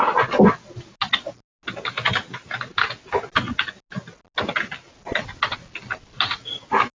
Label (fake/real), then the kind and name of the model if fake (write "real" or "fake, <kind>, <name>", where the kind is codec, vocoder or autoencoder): real